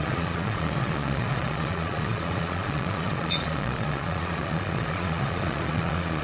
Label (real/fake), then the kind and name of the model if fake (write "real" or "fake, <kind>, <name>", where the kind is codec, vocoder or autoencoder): fake, vocoder, Vocos